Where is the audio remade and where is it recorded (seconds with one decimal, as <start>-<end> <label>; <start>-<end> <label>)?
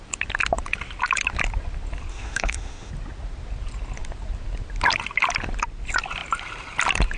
0.0-2.1 recorded; 2.1-2.9 remade; 2.9-7.2 recorded